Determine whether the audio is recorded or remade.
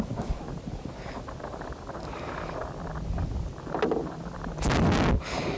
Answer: recorded